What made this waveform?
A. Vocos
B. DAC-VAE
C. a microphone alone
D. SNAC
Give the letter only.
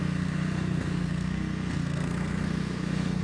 D